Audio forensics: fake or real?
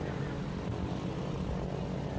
real